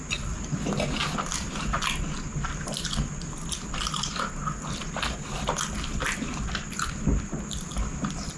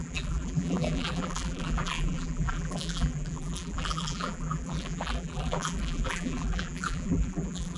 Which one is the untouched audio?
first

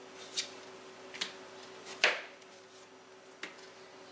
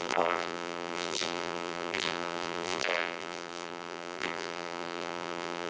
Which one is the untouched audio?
first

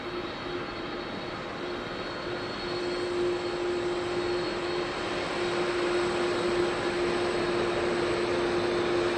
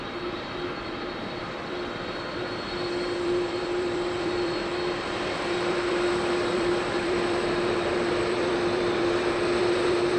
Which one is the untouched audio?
first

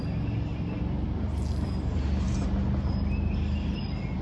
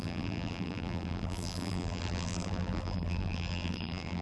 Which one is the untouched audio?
first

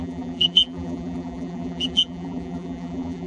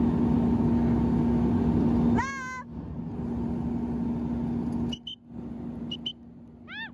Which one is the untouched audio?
second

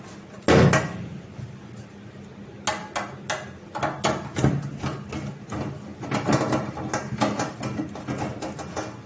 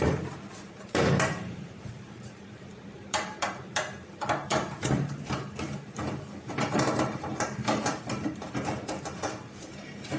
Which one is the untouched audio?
first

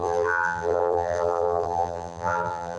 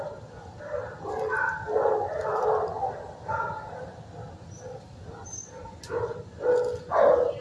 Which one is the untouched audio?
second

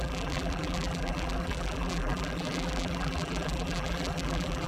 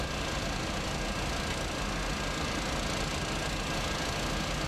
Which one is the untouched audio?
second